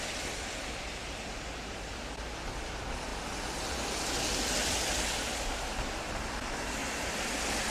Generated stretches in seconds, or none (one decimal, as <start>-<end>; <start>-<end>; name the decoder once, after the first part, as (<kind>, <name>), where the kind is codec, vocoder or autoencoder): none